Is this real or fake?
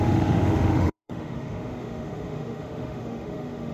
fake